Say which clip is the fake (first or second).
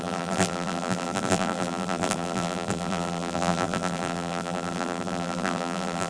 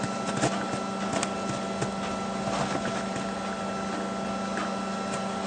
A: first